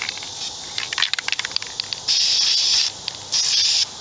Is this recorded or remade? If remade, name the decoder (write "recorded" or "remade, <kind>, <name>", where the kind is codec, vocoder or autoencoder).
recorded